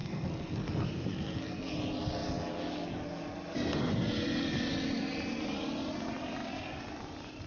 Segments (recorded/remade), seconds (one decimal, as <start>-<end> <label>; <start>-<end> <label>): 0.0-0.7 remade; 0.7-1.1 recorded; 1.1-1.7 remade; 1.7-7.5 recorded

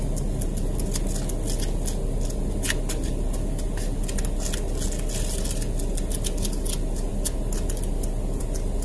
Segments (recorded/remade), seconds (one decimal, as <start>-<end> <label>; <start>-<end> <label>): 0.0-8.8 recorded

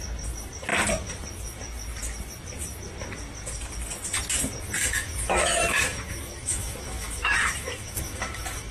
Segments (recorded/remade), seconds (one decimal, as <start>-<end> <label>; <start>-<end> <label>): 0.0-4.8 recorded; 4.8-8.7 remade

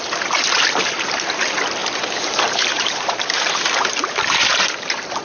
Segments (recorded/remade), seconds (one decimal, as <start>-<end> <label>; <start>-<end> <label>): 0.0-1.8 recorded; 1.8-5.2 remade

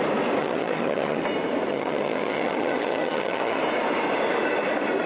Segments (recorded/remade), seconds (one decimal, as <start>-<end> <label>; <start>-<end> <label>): 0.0-0.4 recorded; 0.4-1.2 remade; 1.2-1.7 recorded; 1.7-3.6 remade; 3.6-5.1 recorded

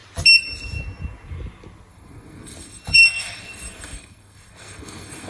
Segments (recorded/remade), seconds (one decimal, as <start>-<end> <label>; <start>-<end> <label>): 0.0-1.9 recorded; 1.9-5.3 remade

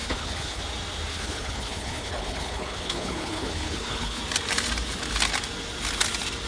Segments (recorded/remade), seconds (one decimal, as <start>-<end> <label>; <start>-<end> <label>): 0.0-0.6 remade; 0.6-1.1 recorded; 1.1-4.2 remade; 4.2-6.5 recorded

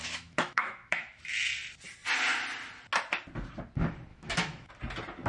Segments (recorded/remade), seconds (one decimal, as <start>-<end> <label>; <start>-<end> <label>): 0.0-1.2 remade; 1.2-4.1 recorded; 4.1-4.7 remade; 4.7-5.3 recorded